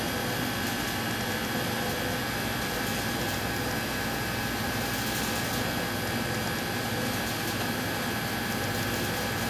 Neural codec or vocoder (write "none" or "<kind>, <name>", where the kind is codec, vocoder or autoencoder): none